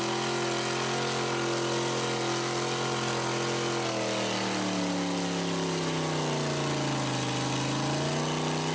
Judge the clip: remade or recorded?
recorded